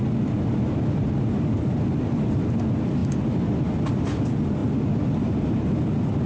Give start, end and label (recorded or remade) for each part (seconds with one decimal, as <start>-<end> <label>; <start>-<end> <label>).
0.0-6.3 recorded